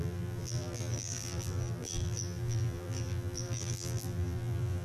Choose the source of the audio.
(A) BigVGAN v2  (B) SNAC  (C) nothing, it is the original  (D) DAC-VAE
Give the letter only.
A